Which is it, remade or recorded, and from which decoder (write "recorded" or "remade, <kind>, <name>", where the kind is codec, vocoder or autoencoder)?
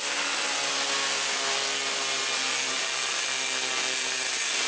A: recorded